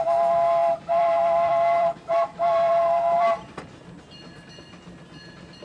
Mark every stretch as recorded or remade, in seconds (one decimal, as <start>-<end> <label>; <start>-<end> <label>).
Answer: 0.0-0.6 recorded; 0.6-4.0 remade; 4.0-5.6 recorded